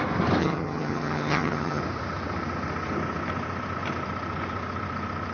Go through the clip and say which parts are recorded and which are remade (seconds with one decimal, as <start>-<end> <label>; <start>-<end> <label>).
0.0-0.4 recorded; 0.4-1.8 remade; 1.8-5.3 recorded